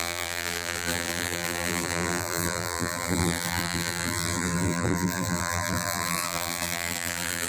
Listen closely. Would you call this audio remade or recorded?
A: remade